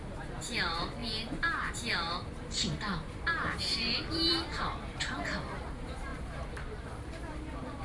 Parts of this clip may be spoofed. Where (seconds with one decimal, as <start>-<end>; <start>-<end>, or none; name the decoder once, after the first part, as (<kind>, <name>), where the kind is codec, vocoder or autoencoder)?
0.0-7.8 (vocoder, BigVGAN v2)